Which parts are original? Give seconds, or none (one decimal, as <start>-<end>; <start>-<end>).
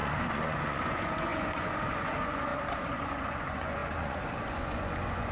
none